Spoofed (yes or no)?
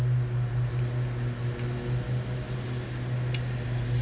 no